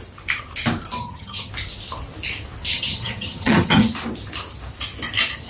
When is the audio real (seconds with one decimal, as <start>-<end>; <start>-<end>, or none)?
0.0-1.0; 1.5-2.7; 3.8-5.5